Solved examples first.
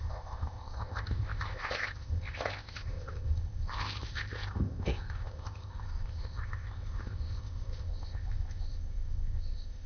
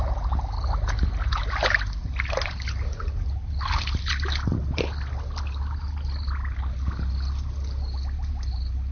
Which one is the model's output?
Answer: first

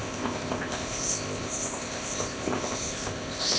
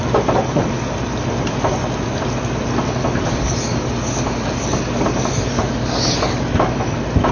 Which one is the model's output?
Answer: first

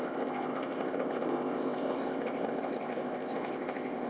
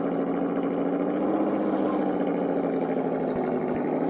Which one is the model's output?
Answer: first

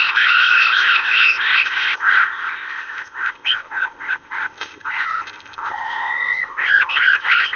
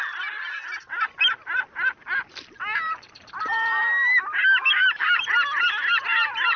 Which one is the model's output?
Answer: first